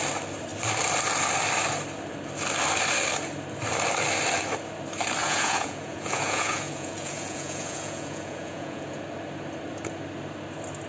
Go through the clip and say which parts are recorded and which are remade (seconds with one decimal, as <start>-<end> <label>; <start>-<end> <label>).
0.0-5.2 recorded; 5.2-9.0 remade; 9.0-10.9 recorded